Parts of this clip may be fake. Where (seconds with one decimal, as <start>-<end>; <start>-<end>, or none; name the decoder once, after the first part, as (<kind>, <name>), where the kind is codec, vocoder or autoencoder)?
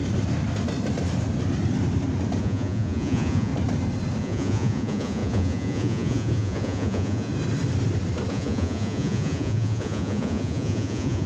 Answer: 2.4-3.5 (vocoder, Vocos); 4.2-7.3; 8.3-11.3